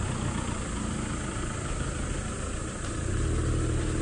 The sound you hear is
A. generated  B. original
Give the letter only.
B